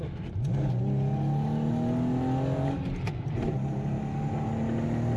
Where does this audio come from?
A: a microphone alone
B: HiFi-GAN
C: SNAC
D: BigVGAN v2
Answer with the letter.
A